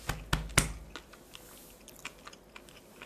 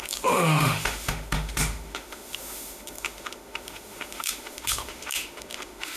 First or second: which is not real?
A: second